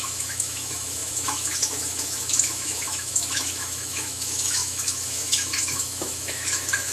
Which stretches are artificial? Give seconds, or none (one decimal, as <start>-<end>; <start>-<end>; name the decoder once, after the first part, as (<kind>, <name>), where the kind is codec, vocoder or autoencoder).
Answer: 0.0-6.9 (autoencoder, DAC-VAE)